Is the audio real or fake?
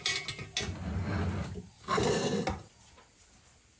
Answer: real